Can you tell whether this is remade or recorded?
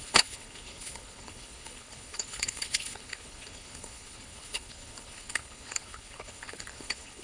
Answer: remade